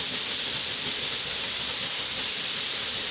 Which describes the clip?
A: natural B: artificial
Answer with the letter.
A